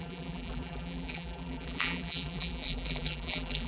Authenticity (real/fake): fake